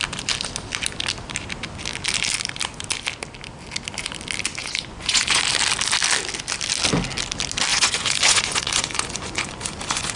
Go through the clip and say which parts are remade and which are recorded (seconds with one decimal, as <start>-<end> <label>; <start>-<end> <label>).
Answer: 0.0-4.6 recorded; 4.6-5.4 remade; 5.4-7.7 recorded; 7.7-10.2 remade